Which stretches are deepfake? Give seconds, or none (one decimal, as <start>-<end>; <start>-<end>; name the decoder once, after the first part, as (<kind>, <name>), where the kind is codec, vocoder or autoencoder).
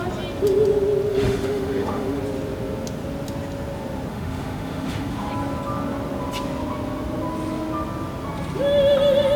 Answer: 1.1-2.2 (autoencoder, DAC-VAE); 4.1-5.3